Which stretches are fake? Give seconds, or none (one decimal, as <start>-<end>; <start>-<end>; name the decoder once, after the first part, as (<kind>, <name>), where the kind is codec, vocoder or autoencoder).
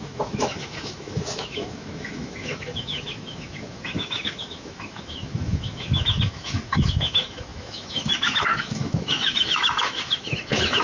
0.0-10.8 (autoencoder, DAC-VAE)